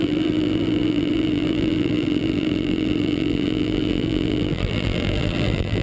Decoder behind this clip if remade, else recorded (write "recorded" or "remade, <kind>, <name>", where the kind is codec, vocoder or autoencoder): remade, vocoder, BigVGAN v2